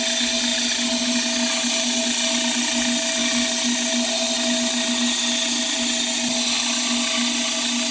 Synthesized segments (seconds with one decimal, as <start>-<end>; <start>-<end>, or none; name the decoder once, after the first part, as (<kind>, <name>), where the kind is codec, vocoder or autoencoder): none